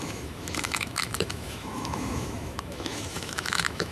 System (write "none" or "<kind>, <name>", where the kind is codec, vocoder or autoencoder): autoencoder, DAC-VAE